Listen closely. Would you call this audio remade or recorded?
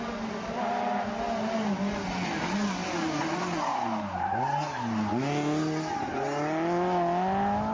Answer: recorded